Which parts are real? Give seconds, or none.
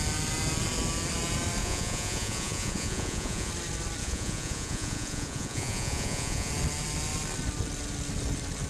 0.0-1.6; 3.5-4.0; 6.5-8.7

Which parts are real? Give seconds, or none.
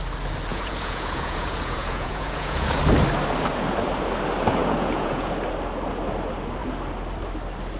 0.0-0.5; 2.8-4.6; 5.3-7.8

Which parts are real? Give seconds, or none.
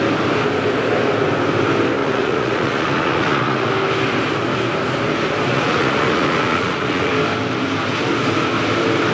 0.0-2.0; 3.7-5.5; 7.1-9.1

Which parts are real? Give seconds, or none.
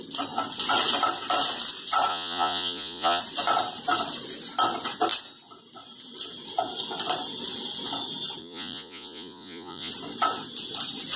0.0-2.1; 3.2-8.4; 9.9-11.2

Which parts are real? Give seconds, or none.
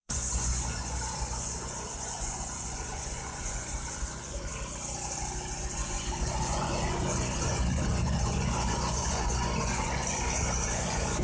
4.5-5.5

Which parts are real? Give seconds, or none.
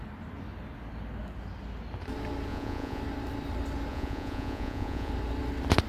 0.0-2.5; 3.0-3.9; 5.1-5.9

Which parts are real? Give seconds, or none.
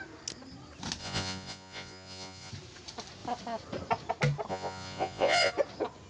0.0-1.0; 2.5-4.5; 5.5-6.1